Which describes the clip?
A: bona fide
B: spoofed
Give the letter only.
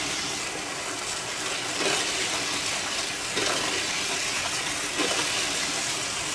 A